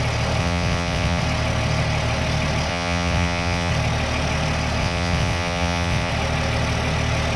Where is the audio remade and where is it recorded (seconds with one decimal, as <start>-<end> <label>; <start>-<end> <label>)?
0.0-0.4 recorded; 0.4-1.2 remade; 1.2-2.7 recorded; 2.7-3.7 remade; 3.7-4.8 recorded; 4.8-6.1 remade; 6.1-7.4 recorded